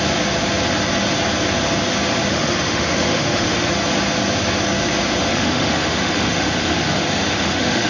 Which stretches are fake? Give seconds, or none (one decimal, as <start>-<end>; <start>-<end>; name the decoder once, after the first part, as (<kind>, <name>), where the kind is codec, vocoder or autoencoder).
2.3-3.7 (autoencoder, DAC-VAE); 5.2-7.9

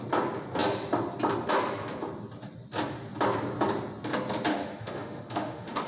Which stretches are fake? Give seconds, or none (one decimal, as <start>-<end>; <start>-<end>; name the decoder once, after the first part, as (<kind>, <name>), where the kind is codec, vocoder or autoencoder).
4.5-5.9 (autoencoder, DAC-VAE)

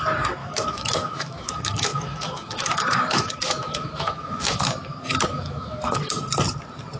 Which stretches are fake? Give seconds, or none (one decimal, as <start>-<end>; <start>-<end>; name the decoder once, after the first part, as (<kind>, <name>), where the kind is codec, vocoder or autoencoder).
0.4-4.6 (autoencoder, DAC-VAE); 5.3-6.1

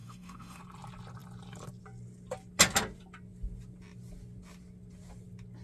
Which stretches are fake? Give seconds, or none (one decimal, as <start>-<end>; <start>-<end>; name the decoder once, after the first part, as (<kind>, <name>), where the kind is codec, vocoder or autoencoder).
0.0-0.6 (autoencoder, DAC-VAE)

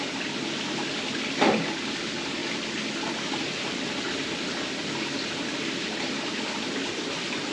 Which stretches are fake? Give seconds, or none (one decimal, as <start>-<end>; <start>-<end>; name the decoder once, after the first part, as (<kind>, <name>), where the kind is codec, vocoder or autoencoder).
none

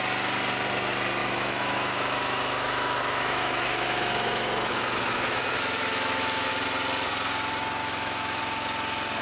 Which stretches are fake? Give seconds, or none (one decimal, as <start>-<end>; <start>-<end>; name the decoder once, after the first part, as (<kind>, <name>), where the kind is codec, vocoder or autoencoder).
1.2-6.5 (autoencoder, DAC-VAE); 7.8-8.4

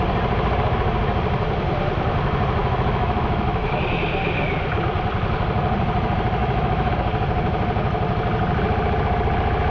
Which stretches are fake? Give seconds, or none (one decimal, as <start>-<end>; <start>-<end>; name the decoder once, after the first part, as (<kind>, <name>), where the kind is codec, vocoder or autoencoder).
2.6-4.0 (autoencoder, DAC-VAE); 6.4-6.9

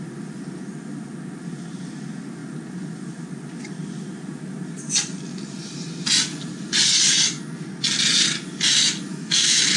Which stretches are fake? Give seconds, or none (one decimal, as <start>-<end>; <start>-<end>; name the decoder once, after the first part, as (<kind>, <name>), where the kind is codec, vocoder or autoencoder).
9.1-9.8 (autoencoder, DAC-VAE)